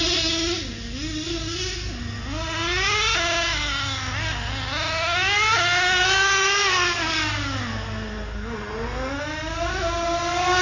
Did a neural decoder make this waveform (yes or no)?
no